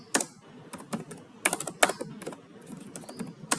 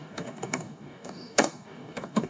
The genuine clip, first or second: first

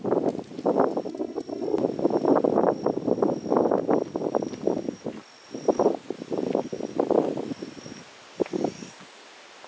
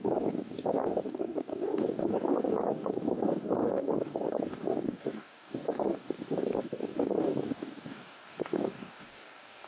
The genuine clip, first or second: first